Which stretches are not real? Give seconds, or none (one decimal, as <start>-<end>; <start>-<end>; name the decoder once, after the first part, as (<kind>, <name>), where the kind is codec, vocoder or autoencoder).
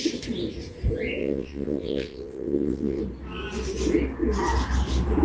1.2-3.0 (vocoder, WaveNeXt)